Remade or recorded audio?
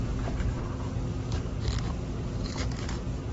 recorded